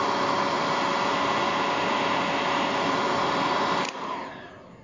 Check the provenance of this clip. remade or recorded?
recorded